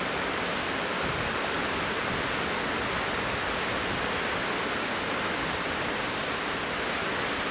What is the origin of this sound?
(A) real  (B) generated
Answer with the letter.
A